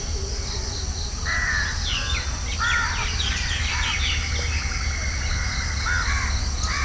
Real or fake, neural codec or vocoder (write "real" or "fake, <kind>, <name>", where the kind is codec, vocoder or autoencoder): real